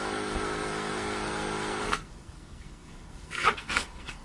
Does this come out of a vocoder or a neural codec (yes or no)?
yes